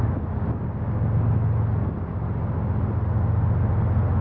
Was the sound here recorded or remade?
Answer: recorded